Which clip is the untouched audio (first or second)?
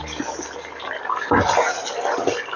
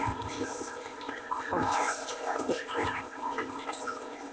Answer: first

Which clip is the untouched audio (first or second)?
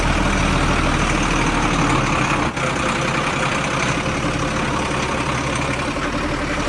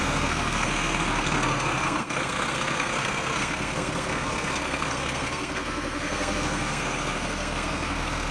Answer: first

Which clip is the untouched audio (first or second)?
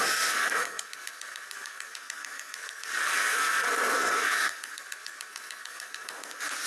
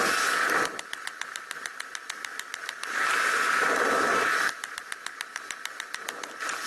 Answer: second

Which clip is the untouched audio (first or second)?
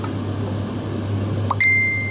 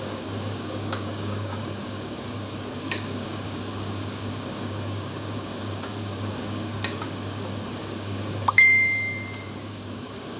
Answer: first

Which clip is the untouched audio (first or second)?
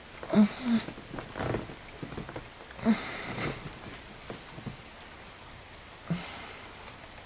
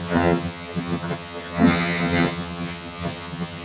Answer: first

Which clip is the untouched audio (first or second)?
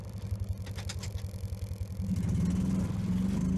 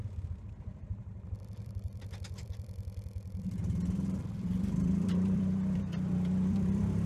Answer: first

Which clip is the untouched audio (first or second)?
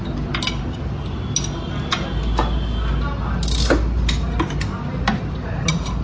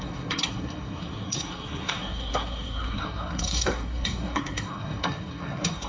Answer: first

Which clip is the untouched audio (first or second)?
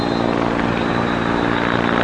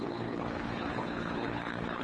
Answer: first